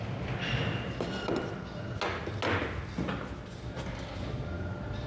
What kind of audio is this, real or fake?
real